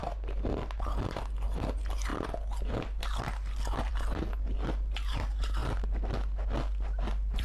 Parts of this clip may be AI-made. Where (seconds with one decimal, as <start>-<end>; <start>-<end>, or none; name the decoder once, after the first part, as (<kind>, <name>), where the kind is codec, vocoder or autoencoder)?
none

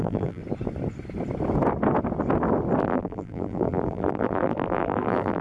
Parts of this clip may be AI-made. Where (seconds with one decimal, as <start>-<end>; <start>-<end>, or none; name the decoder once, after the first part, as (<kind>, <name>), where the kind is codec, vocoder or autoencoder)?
0.0-0.4 (vocoder, BigVGAN v2); 2.8-5.4